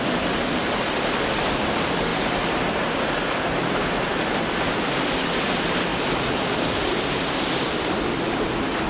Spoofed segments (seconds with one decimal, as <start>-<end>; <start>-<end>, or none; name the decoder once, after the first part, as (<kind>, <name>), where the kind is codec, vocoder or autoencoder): 2.1-3.1 (vocoder, BigVGAN v2); 5.9-6.9